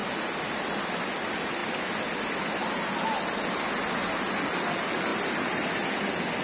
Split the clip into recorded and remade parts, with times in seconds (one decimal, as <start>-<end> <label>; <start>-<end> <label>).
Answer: 0.0-5.1 recorded; 5.1-5.7 remade; 5.7-6.4 recorded